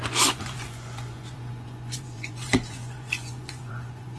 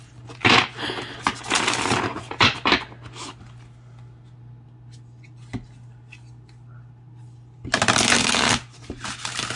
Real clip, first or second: second